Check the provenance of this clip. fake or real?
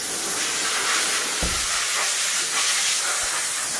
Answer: real